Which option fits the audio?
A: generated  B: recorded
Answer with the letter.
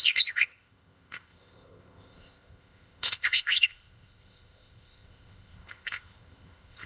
A